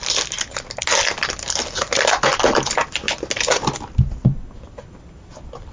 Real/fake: real